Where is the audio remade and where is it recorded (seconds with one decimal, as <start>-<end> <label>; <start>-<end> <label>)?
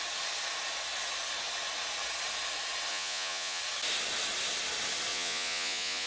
0.0-2.9 recorded; 2.9-3.6 remade; 3.6-5.1 recorded; 5.1-6.1 remade